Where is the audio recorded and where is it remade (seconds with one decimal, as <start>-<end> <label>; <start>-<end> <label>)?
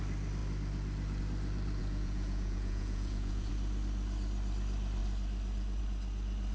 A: 0.0-1.8 recorded; 1.8-3.5 remade; 3.5-6.5 recorded